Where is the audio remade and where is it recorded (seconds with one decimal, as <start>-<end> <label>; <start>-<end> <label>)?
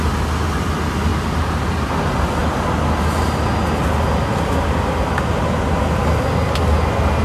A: 0.0-1.1 recorded; 1.1-1.9 remade; 1.9-7.2 recorded